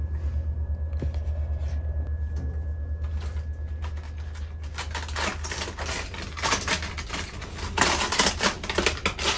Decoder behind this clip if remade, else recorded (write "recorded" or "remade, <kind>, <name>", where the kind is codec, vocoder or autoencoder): recorded